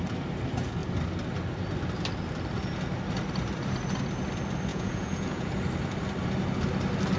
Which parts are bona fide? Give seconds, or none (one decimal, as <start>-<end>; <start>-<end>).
0.0-4.7; 5.5-7.2